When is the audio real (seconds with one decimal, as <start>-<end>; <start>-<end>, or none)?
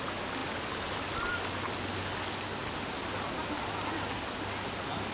0.0-5.1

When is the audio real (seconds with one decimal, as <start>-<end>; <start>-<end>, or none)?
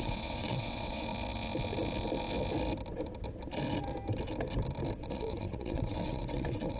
1.1-5.0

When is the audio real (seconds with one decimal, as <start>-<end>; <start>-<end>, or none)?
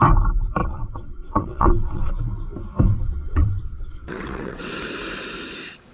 0.0-0.6; 2.1-2.9; 4.7-5.9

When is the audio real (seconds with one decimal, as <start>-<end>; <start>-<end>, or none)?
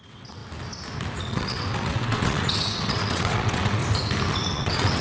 0.4-1.2; 3.8-4.3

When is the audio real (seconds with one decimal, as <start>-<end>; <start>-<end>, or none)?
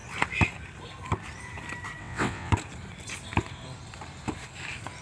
0.0-2.0; 2.5-5.0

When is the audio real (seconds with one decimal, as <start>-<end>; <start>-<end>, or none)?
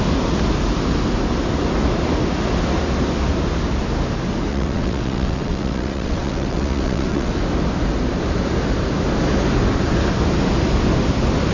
0.0-4.5; 7.3-11.5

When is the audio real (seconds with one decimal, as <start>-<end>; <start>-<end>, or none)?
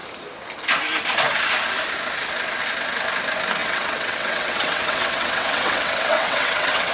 0.0-3.6